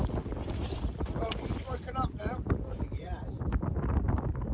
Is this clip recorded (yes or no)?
yes